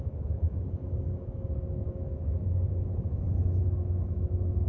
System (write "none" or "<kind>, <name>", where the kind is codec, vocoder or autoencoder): autoencoder, DAC-VAE